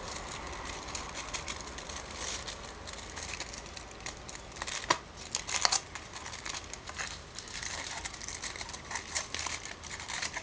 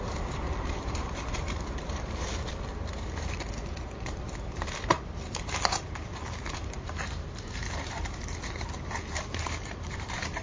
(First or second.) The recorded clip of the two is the first